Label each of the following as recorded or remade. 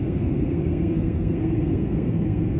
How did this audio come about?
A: remade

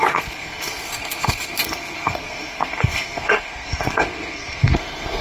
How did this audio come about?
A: remade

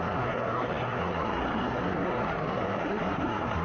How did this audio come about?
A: remade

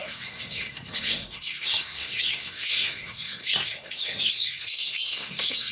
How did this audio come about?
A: remade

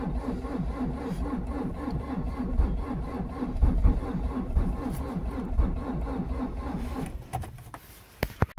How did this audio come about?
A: recorded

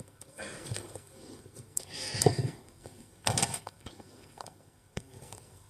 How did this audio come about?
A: remade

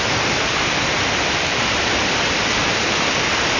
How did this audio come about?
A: recorded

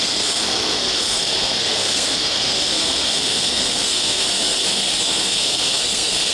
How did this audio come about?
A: remade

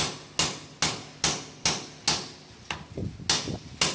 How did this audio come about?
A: recorded